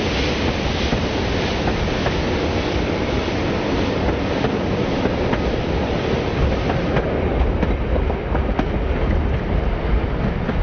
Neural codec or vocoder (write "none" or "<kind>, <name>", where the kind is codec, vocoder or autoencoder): none